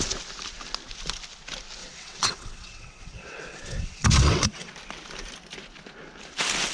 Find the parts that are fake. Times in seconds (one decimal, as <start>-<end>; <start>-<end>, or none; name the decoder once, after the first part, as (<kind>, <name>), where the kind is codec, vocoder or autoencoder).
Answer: 1.8-4.7 (vocoder, WaveNeXt)

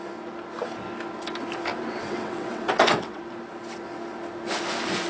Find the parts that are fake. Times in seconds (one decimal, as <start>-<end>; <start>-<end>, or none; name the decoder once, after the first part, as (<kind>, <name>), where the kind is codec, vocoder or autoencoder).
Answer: 1.7-3.2 (vocoder, WaveNeXt)

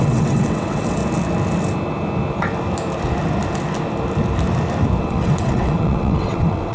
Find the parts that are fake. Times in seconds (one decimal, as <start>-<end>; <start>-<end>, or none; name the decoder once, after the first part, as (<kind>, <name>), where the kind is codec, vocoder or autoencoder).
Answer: 0.0-1.0 (vocoder, WaveNeXt); 5.0-6.7

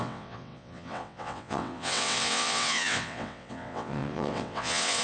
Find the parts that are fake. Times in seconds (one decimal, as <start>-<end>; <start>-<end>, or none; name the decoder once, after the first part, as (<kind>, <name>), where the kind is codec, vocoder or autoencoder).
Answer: 0.0-5.0 (vocoder, WaveNeXt)

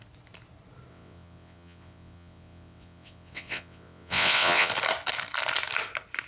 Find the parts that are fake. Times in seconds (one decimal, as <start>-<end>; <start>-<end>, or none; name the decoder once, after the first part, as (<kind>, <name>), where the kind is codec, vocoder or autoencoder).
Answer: 0.9-4.7 (vocoder, WaveNeXt)

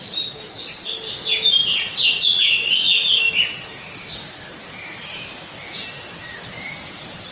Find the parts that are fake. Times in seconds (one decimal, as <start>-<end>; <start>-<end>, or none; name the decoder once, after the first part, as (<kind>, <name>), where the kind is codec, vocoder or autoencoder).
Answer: 1.7-3.2 (vocoder, WaveNeXt)